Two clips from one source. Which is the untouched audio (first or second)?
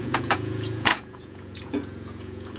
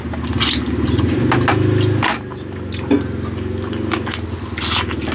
second